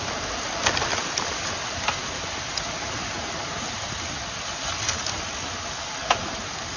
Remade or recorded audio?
recorded